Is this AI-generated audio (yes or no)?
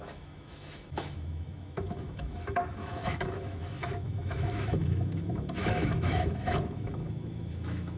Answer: yes